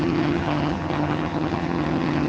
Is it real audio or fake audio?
fake